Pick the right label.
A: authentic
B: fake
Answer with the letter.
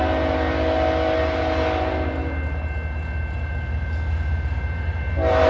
A